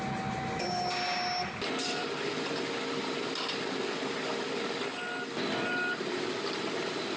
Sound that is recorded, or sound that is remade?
recorded